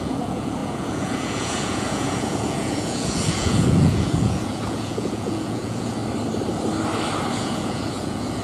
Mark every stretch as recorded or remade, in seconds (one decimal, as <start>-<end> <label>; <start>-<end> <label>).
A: 0.0-6.0 remade; 6.0-7.4 recorded; 7.4-8.4 remade